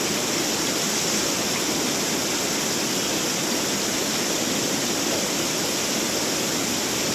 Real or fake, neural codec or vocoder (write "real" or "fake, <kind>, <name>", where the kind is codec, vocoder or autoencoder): real